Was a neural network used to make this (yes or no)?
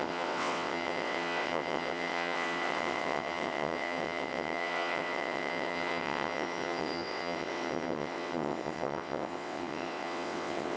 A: yes